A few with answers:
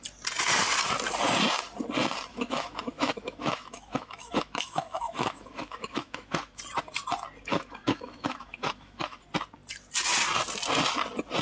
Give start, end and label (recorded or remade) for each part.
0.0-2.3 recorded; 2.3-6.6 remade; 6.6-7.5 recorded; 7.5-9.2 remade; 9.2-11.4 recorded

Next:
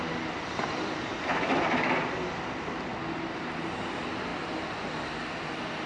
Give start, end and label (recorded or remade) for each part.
0.0-1.3 recorded; 1.3-1.9 remade; 1.9-5.9 recorded

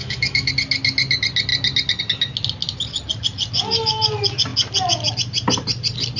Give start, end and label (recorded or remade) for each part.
0.0-0.5 remade; 0.5-6.2 recorded

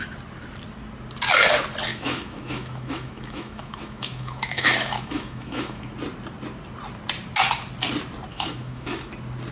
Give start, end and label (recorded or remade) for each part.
0.0-1.9 recorded; 1.9-5.9 remade; 5.9-8.3 recorded; 8.3-9.1 remade; 9.1-9.5 recorded

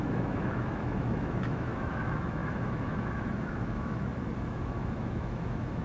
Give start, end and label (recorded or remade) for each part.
0.0-5.8 remade

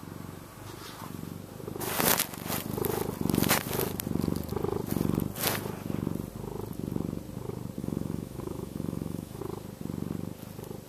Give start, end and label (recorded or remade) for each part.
0.0-7.8 recorded; 7.8-9.4 remade; 9.4-10.9 recorded